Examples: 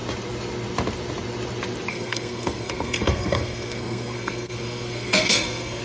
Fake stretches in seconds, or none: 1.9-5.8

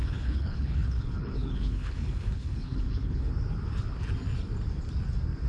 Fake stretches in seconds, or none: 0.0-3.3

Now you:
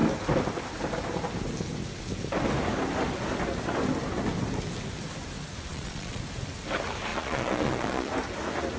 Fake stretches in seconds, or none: 5.7-6.2; 7.1-8.1